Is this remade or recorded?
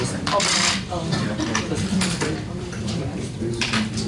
remade